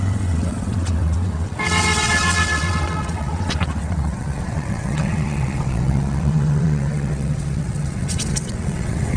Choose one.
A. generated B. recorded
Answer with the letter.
A